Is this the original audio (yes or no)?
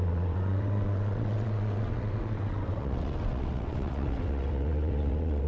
no